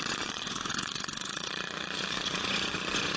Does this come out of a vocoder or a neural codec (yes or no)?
yes